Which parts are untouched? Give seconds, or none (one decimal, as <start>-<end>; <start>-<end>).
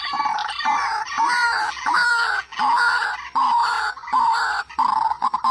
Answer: 0.0-1.4; 3.1-3.6; 4.2-5.5